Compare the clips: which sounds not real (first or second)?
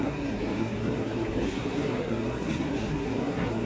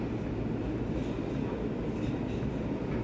first